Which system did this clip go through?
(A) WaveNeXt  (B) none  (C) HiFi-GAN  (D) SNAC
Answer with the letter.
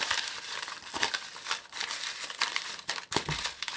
B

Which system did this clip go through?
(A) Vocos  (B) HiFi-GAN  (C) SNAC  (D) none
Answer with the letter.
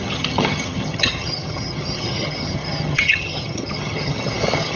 B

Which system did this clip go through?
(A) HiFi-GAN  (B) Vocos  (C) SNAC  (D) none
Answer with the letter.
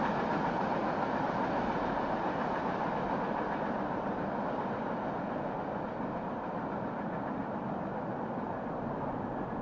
D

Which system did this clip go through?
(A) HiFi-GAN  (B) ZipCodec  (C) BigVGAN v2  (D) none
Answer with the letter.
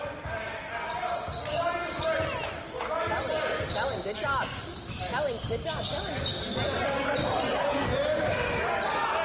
D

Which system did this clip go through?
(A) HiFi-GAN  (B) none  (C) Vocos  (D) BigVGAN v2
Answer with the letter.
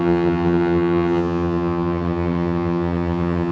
A